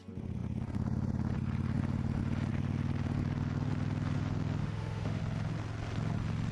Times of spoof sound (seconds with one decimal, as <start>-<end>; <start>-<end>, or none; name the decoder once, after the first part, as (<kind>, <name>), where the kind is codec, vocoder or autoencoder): 4.6-5.2 (autoencoder, DAC-VAE)